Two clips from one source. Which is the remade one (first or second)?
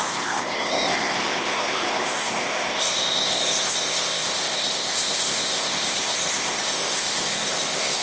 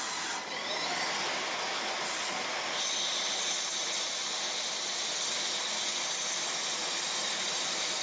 first